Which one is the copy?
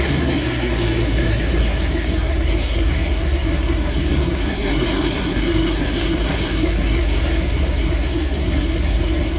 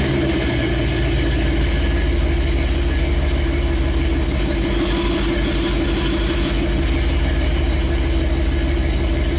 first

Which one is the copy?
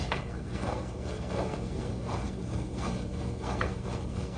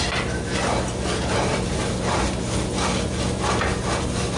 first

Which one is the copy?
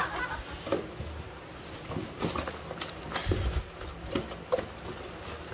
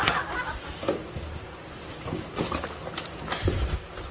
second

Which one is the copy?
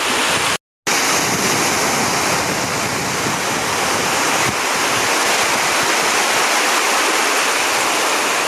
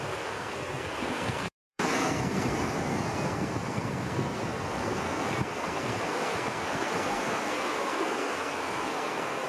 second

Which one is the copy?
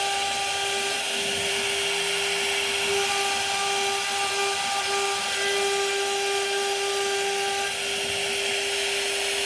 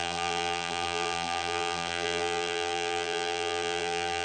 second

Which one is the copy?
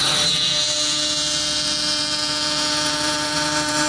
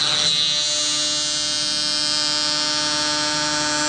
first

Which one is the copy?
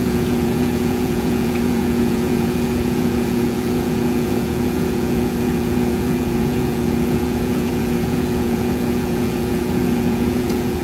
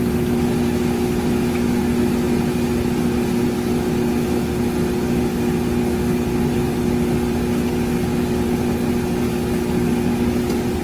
first